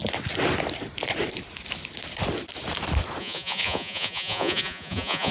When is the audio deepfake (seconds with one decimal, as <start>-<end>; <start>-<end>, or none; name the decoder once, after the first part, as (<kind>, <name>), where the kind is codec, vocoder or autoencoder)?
3.2-5.3 (vocoder, Vocos)